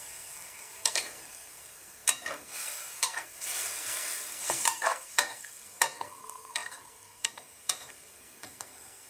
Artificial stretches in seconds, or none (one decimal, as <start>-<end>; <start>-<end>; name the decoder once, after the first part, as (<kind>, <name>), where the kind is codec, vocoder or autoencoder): 0.0-9.1 (codec, SNAC)

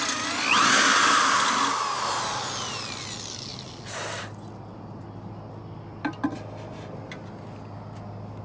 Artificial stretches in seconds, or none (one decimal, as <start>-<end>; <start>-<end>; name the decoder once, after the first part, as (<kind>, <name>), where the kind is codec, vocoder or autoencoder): none

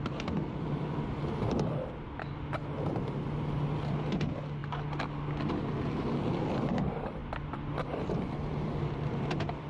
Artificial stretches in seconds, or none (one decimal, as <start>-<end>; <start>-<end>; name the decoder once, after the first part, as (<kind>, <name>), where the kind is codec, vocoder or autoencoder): 0.0-4.6 (vocoder, BigVGAN v2); 5.5-9.7